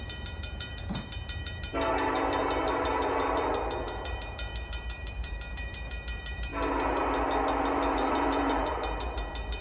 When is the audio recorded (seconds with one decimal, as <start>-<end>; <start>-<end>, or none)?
6.5-7.9

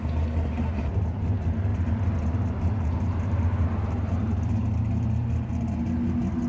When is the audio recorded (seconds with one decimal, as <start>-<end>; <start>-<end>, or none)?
0.0-1.7; 4.6-6.5

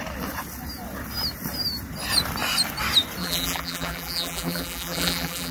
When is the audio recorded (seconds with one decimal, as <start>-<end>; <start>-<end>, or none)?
0.0-3.2

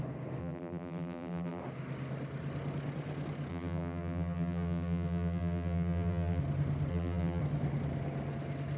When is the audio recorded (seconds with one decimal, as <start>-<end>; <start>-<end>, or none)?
0.0-0.4; 1.6-3.5; 6.4-6.9; 7.4-8.8

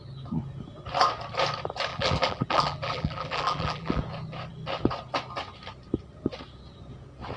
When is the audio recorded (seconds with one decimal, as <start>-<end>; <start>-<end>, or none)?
0.0-1.9; 4.0-7.4

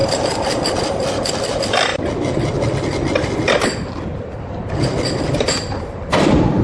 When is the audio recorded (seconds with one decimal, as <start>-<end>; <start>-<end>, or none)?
1.9-4.7

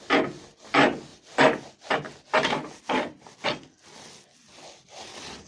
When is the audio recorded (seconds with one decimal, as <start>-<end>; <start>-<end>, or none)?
0.0-1.1; 1.9-5.5

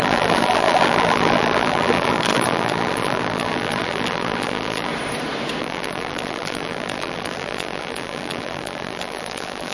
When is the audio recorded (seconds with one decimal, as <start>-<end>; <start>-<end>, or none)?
4.9-5.6